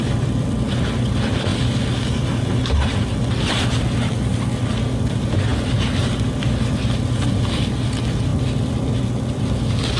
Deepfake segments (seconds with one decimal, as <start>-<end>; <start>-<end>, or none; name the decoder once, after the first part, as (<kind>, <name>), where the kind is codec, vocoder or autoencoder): 8.3-9.0 (vocoder, BigVGAN v2)